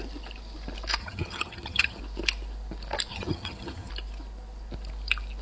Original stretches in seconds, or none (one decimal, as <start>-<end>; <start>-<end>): 0.0-1.0; 2.0-3.1; 3.9-5.4